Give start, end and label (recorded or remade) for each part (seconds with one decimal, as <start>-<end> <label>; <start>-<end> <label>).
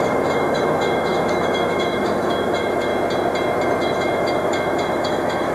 0.0-2.9 remade; 2.9-3.8 recorded; 3.8-5.5 remade